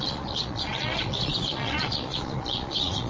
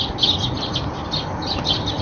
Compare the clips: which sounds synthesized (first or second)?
first